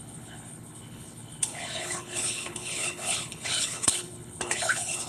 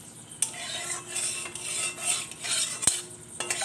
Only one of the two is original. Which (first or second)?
second